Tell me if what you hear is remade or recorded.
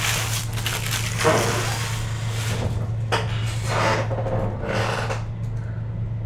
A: recorded